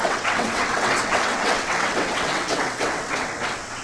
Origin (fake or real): fake